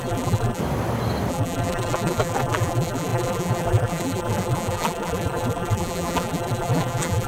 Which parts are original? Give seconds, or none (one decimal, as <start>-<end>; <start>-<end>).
0.6-1.3